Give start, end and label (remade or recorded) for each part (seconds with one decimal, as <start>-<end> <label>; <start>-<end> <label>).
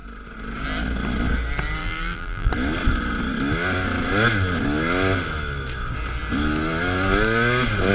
0.0-1.8 recorded; 1.8-2.5 remade; 2.5-7.9 recorded